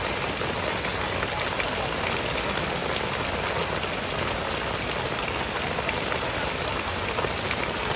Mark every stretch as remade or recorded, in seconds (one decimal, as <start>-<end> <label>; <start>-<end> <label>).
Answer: 0.0-8.0 recorded